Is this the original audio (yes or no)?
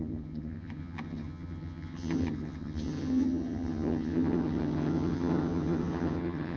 no